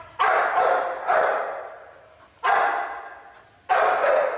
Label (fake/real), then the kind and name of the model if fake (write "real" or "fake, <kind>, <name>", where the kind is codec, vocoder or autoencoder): real